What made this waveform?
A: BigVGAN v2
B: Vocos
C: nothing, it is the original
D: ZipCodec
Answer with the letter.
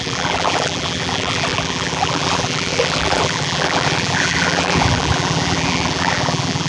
A